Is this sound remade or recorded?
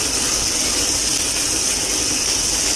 recorded